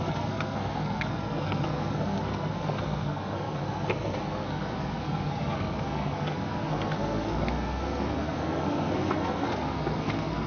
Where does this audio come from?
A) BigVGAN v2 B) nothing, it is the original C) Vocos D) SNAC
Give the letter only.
D